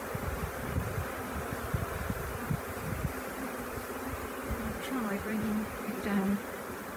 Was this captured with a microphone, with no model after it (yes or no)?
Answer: no